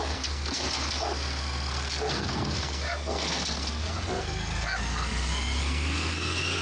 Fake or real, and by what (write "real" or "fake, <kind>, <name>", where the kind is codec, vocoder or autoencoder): fake, codec, SNAC